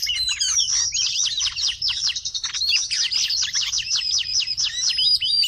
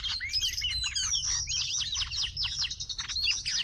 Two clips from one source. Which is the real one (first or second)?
second